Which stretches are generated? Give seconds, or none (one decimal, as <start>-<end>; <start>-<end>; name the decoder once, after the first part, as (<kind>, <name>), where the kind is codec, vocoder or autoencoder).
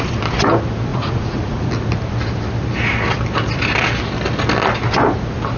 0.9-1.7 (vocoder, Vocos)